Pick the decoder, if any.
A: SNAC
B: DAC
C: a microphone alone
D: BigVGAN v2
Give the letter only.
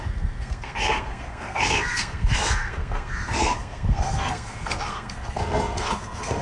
A